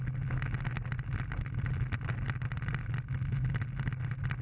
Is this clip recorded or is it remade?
recorded